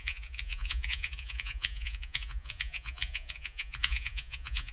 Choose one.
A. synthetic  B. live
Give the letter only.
A